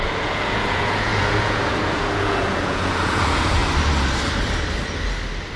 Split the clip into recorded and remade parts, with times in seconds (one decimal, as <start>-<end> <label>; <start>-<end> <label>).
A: 0.0-3.6 remade; 3.6-5.6 recorded